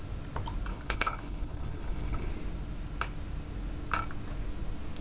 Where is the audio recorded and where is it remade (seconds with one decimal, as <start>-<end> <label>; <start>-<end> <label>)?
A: 0.0-0.7 recorded; 0.7-2.3 remade; 2.3-5.0 recorded